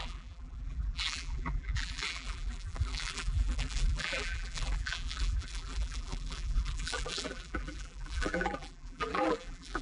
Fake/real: fake